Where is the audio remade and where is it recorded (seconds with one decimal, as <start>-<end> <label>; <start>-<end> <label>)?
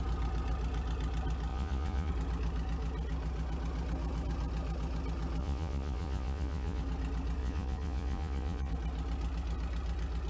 0.0-1.5 recorded; 1.5-2.1 remade; 2.1-5.4 recorded; 5.4-6.8 remade; 6.8-7.4 recorded; 7.4-8.7 remade; 8.7-10.3 recorded